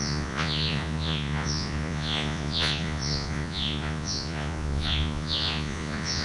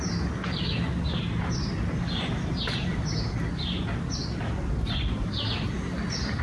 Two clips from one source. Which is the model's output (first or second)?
first